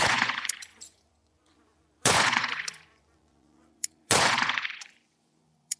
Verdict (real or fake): fake